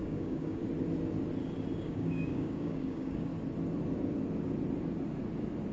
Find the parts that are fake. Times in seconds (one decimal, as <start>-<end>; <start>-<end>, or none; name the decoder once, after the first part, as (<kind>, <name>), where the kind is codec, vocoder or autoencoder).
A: 0.0-0.6 (codec, DAC); 1.8-3.3